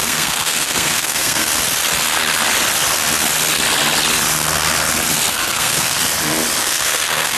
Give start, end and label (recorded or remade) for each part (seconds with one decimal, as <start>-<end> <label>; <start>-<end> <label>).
0.0-1.5 remade; 1.5-5.3 recorded; 5.3-6.0 remade; 6.0-6.6 recorded; 6.6-7.4 remade